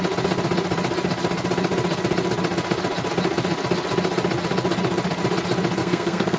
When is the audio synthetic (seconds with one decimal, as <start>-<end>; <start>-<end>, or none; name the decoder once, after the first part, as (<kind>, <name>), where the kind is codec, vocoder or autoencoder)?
5.8-6.4 (codec, SNAC)